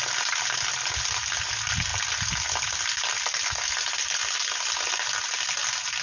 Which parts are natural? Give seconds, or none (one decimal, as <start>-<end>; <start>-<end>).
0.0-6.0